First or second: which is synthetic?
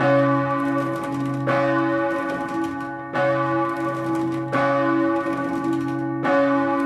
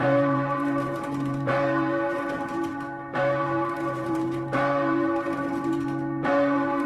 second